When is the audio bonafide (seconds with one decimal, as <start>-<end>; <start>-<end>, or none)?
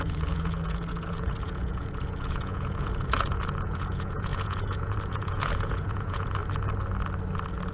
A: 6.4-7.7